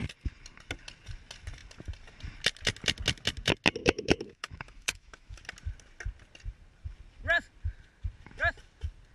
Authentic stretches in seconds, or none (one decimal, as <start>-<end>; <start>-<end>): 0.0-3.8; 5.4-9.1